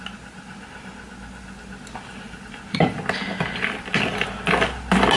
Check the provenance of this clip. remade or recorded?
recorded